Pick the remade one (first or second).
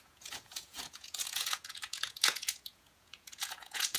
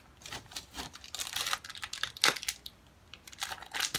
first